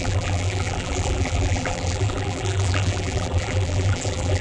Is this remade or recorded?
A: remade